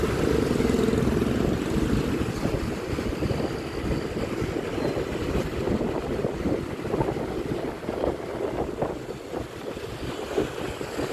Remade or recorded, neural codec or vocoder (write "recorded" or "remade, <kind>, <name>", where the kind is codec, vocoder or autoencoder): recorded